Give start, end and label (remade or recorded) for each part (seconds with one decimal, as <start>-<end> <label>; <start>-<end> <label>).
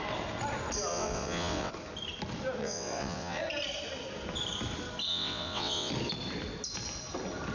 0.0-0.9 recorded; 0.9-1.7 remade; 1.7-2.6 recorded; 2.6-3.4 remade; 3.4-5.1 recorded; 5.1-5.9 remade; 5.9-7.5 recorded